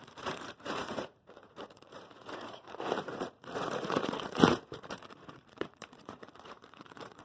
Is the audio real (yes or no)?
no